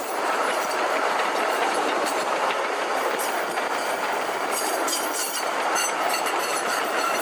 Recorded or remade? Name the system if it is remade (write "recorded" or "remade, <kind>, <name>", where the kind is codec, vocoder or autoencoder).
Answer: remade, vocoder, BigVGAN v2